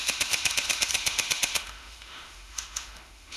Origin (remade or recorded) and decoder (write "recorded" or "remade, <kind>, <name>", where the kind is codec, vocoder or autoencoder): remade, autoencoder, DAC-VAE